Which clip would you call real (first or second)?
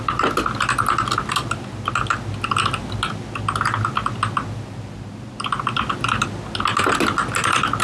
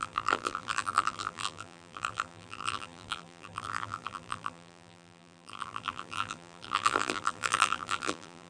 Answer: first